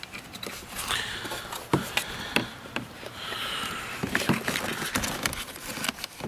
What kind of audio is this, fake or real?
real